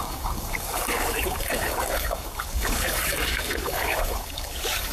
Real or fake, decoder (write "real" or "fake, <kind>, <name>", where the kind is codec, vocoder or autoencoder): fake, codec, DAC